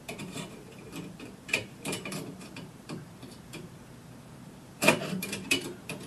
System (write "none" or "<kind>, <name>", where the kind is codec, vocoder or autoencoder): vocoder, BigVGAN v2